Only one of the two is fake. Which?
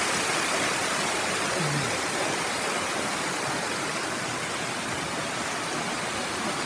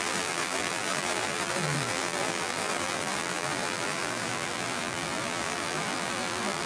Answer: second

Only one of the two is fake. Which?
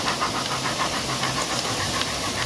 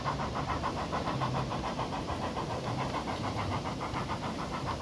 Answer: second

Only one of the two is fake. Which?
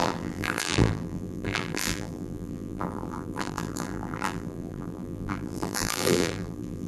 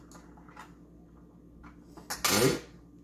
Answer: first